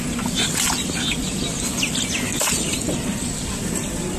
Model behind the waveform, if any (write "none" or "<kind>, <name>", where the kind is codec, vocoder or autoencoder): none